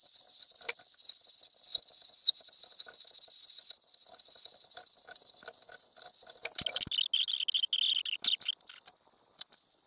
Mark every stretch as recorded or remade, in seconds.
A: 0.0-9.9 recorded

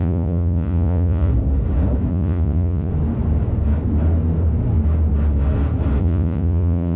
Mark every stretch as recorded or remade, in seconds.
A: 0.0-1.3 remade; 1.3-2.1 recorded; 2.1-2.9 remade; 2.9-6.0 recorded; 6.0-7.0 remade